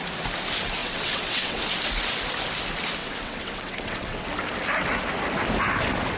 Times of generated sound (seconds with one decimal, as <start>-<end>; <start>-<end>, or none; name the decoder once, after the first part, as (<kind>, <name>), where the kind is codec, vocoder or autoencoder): 0.8-1.6 (vocoder, WaveNeXt); 3.0-4.3

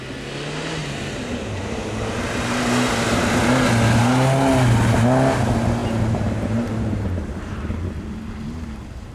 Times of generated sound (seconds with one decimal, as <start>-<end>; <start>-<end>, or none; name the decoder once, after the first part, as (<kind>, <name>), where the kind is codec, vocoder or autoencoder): 0.8-2.6 (vocoder, BigVGAN v2); 5.8-7.7